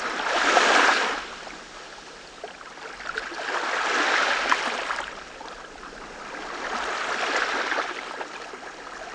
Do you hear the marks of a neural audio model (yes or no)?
yes